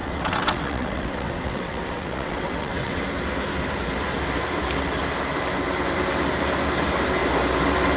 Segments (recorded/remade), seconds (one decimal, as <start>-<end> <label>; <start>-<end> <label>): 0.0-3.0 remade; 3.0-8.0 recorded